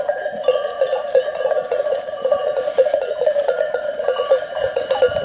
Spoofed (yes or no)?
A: yes